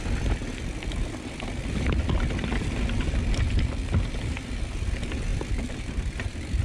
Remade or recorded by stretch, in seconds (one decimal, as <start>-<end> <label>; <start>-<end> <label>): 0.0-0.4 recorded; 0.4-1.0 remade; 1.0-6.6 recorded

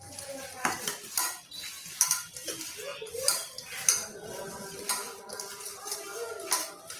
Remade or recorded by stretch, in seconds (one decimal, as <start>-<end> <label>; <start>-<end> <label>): 0.0-2.9 recorded; 2.9-4.9 remade; 4.9-7.0 recorded

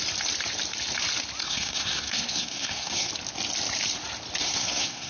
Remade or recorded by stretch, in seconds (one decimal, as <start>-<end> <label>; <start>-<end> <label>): 0.0-1.4 recorded; 1.4-3.1 remade; 3.1-4.4 recorded; 4.4-5.1 remade

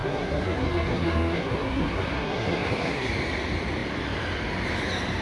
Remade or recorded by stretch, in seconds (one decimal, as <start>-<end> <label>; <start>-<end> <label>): 0.0-3.1 remade; 3.1-5.2 recorded